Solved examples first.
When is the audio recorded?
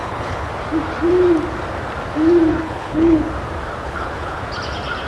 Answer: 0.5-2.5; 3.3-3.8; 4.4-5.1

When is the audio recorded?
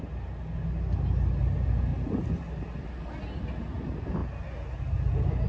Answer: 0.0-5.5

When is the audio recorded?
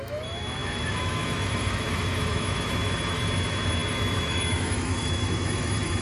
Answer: none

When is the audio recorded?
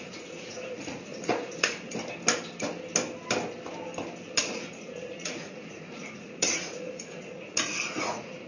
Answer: 1.9-4.4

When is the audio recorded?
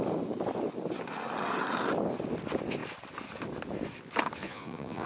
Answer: 0.0-4.4